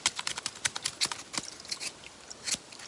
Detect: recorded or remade recorded